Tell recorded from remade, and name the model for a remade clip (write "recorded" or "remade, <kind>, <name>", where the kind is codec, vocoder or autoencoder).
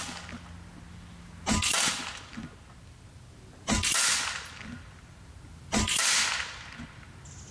recorded